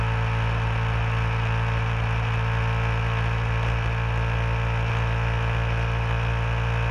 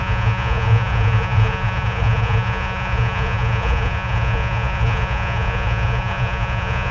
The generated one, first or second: second